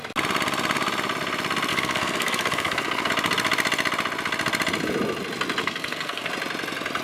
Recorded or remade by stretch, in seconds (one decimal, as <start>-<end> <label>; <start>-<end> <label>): 0.0-1.7 recorded; 1.7-3.1 remade; 3.1-5.6 recorded; 5.6-6.3 remade; 6.3-7.0 recorded